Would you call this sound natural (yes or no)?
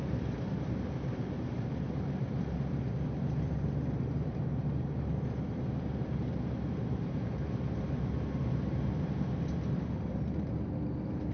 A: no